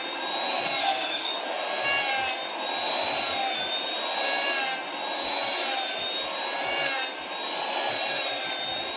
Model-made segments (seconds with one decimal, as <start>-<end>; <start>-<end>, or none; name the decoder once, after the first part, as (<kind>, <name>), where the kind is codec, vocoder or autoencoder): 0.8-1.3 (codec, SNAC)